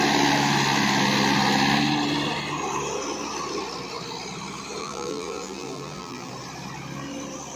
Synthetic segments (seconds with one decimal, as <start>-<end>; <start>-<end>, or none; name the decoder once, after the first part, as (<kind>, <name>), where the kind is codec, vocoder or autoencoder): 4.8-6.3 (vocoder, BigVGAN v2)